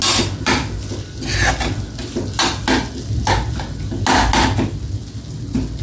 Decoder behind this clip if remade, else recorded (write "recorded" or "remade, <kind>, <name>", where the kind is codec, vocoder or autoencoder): recorded